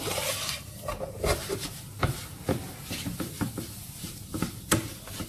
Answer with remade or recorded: recorded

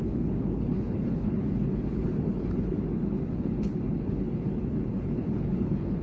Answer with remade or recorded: remade